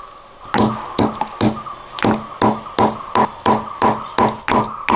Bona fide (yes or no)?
yes